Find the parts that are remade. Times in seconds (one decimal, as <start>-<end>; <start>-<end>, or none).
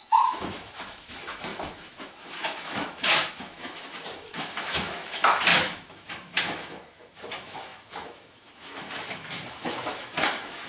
0.0-10.7